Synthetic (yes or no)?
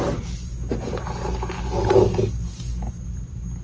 no